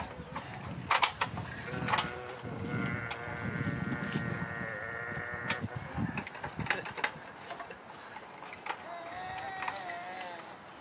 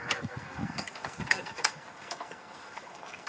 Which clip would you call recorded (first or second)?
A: first